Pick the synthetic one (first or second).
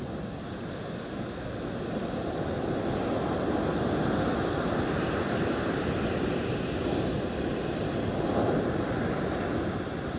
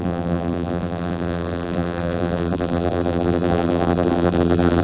second